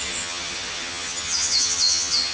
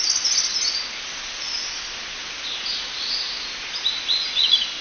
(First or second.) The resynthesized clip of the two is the first